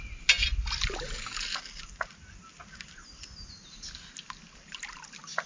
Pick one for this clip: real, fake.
real